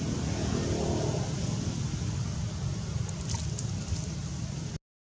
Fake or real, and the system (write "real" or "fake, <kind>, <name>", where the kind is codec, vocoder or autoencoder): real